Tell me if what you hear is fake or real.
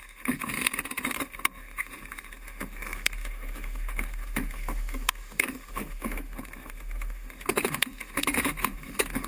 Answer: fake